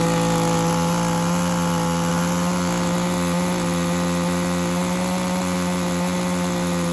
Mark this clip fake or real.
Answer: real